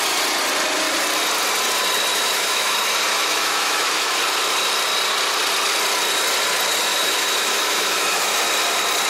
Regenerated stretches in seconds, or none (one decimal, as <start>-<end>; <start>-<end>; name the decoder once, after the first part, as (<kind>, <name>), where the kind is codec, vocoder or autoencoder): 2.1-4.2 (autoencoder, DAC-VAE); 6.9-8.4